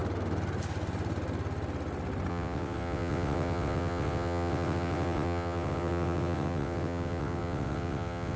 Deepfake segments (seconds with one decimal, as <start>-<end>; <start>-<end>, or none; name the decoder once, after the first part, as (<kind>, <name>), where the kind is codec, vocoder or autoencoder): 2.3-8.4 (vocoder, WaveNeXt)